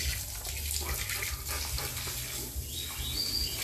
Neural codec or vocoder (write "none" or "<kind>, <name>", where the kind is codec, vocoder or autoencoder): none